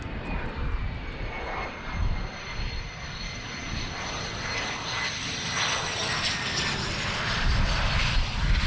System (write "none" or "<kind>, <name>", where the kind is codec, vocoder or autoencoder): none